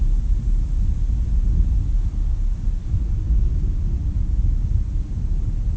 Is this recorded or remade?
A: recorded